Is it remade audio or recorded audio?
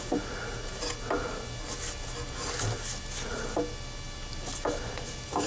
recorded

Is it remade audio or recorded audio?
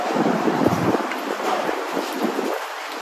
remade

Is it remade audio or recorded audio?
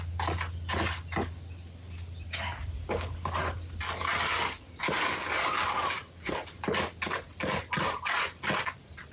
recorded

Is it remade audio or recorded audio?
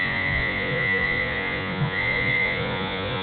remade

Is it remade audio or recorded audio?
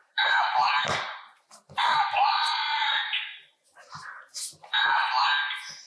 remade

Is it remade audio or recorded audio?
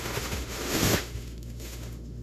remade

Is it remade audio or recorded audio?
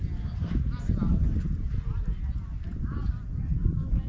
recorded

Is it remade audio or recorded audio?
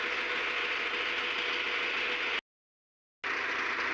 recorded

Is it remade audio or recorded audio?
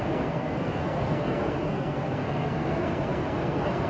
remade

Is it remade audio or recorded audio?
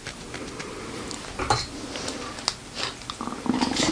recorded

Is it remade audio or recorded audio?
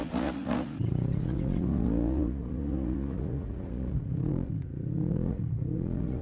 remade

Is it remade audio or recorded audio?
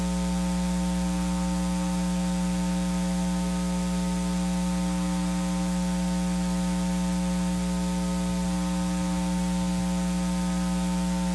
recorded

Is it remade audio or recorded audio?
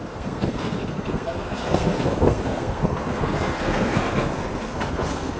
remade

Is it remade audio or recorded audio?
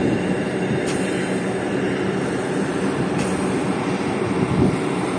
recorded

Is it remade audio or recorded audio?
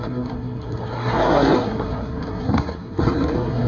remade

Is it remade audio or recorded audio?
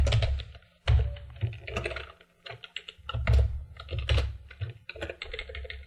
recorded